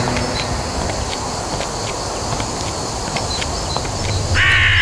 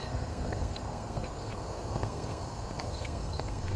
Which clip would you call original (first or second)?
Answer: first